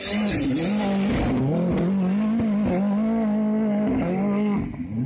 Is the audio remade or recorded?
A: recorded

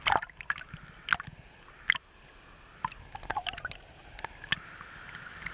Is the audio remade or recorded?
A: recorded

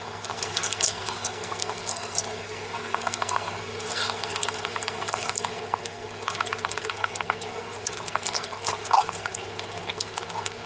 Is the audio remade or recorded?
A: remade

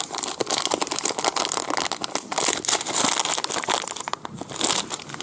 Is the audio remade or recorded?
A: recorded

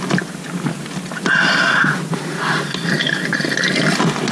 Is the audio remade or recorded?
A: recorded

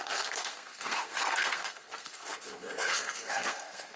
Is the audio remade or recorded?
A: remade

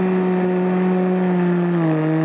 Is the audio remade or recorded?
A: recorded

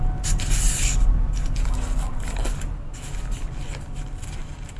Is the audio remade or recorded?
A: recorded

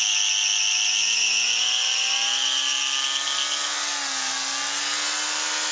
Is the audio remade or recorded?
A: recorded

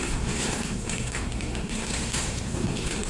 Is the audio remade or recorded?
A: remade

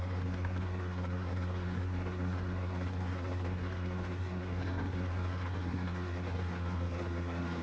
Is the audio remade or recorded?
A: remade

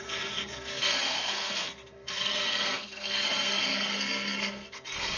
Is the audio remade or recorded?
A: remade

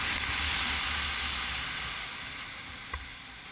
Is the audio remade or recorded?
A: recorded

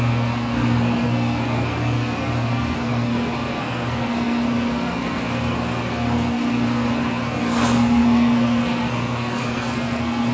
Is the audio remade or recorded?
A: remade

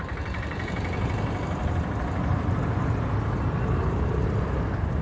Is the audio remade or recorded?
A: recorded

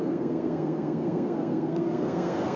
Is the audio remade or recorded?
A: remade